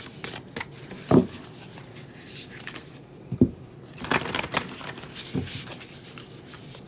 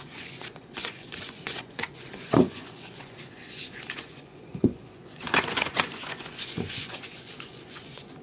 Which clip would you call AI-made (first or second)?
second